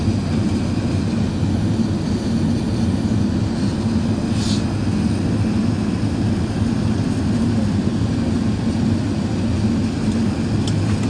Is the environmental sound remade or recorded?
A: recorded